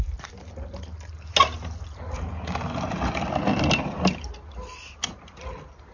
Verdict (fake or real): real